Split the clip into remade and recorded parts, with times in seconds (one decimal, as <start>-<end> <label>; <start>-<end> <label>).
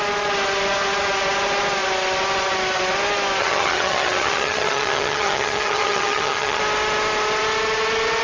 0.0-3.4 recorded; 3.4-6.6 remade; 6.6-8.2 recorded